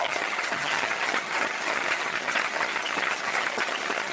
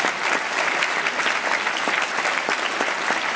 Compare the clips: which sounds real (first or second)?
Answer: second